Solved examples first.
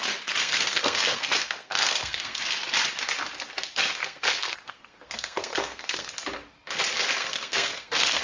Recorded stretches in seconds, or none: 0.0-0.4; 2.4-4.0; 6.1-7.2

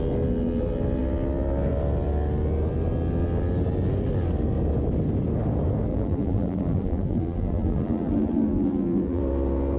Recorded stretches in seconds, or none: 0.0-5.9; 9.2-9.8

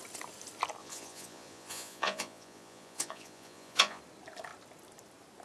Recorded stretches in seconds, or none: 0.0-0.8; 4.0-5.4

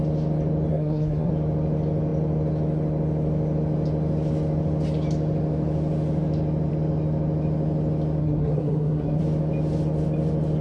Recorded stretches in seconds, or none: 0.0-0.7; 1.3-8.2; 9.2-10.6

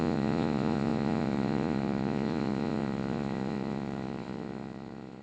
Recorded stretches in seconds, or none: none

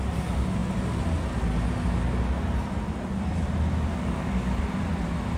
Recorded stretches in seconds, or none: 0.0-3.9; 4.6-5.4

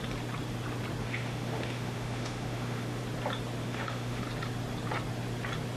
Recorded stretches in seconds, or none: 0.0-1.0; 3.0-3.6; 4.2-5.8

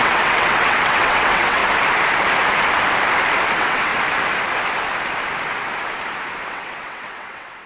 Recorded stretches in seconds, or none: 1.6-3.5; 3.9-6.5